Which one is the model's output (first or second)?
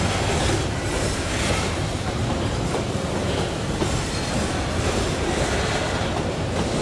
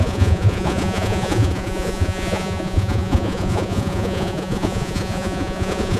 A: second